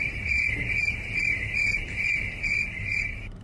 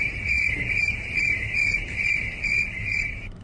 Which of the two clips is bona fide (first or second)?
first